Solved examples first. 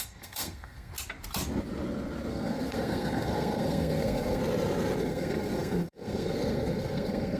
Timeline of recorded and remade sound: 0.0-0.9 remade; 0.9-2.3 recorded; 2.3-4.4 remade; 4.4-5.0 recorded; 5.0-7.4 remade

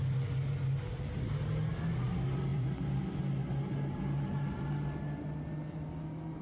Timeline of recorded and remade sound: 0.0-2.5 recorded; 2.5-3.0 remade; 3.0-6.4 recorded

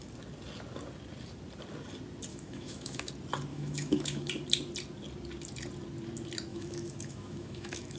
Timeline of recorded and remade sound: 0.0-2.3 recorded; 2.3-3.1 remade; 3.1-3.5 recorded; 3.5-4.3 remade; 4.3-6.5 recorded; 6.5-8.0 remade

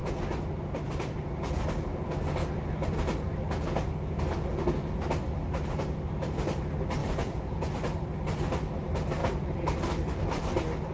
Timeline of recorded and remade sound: 0.0-7.0 recorded; 7.0-7.7 remade; 7.7-10.9 recorded

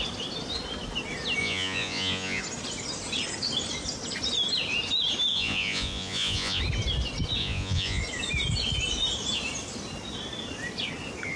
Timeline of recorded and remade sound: 0.0-1.4 recorded; 1.4-2.4 remade; 2.4-5.3 recorded; 5.3-6.6 remade; 6.6-7.4 recorded; 7.4-8.0 remade; 8.0-11.4 recorded